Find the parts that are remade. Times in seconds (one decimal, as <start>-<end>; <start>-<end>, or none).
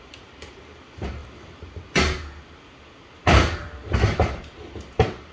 0.0-1.2; 4.4-5.3